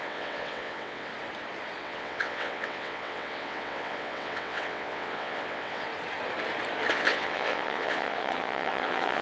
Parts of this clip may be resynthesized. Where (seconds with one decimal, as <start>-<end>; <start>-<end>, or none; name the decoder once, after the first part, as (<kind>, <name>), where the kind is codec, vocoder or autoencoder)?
0.0-1.1 (vocoder, WaveNeXt); 1.8-5.9; 6.9-9.2